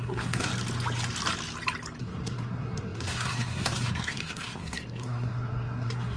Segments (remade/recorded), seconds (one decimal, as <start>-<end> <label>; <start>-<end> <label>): 0.0-0.5 remade; 0.5-2.0 recorded; 2.0-6.2 remade